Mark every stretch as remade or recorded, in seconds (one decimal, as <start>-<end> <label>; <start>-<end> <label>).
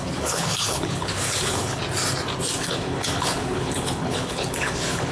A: 0.0-1.8 remade; 1.8-2.6 recorded; 2.6-5.1 remade